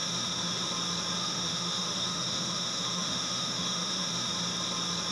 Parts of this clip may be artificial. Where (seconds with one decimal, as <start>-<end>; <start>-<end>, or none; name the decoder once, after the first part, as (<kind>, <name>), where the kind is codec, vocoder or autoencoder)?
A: 0.0-0.7 (autoencoder, DAC-VAE); 1.2-4.3